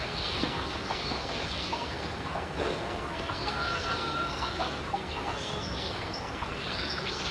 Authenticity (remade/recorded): remade